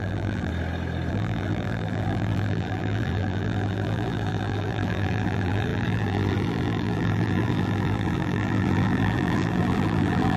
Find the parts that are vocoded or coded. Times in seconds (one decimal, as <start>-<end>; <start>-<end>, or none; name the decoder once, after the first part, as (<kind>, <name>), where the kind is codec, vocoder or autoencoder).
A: 0.0-0.5 (vocoder, BigVGAN v2); 1.1-10.4